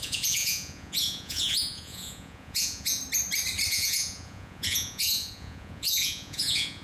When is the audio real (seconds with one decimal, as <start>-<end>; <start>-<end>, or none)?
3.0-3.7